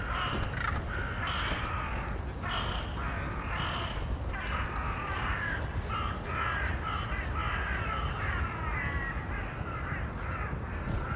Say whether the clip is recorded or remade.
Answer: recorded